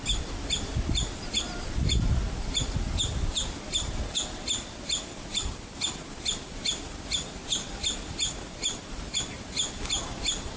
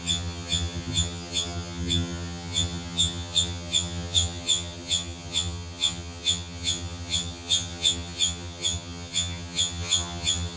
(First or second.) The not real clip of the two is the second